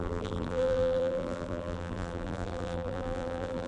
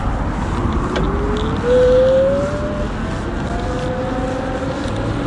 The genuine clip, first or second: second